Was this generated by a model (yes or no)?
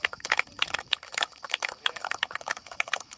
yes